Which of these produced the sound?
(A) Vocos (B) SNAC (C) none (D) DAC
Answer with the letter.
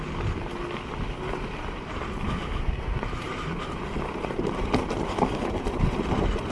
C